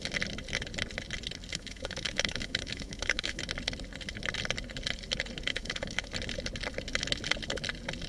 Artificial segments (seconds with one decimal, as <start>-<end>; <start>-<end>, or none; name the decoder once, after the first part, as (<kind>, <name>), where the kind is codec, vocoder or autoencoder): 1.5-3.4 (autoencoder, DAC-VAE); 5.5-6.1